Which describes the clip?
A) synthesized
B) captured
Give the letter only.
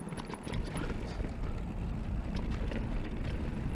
B